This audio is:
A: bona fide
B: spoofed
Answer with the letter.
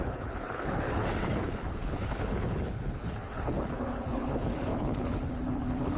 B